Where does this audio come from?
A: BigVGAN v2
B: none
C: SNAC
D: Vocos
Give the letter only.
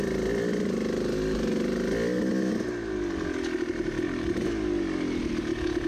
B